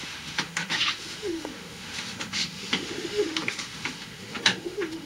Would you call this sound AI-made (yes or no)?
yes